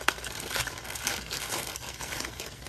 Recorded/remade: remade